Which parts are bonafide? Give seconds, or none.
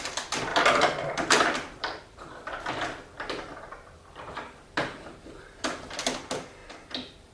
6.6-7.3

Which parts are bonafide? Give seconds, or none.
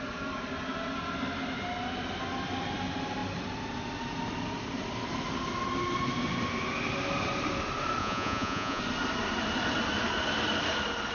0.0-8.0; 8.8-11.1